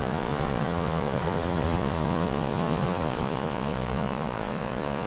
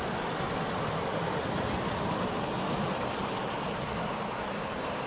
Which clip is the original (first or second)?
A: second